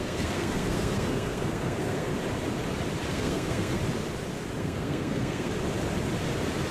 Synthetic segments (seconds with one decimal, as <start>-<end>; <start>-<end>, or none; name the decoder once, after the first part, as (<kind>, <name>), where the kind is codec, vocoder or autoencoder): 0.0-2.1 (codec, SNAC); 3.1-3.8; 4.6-5.5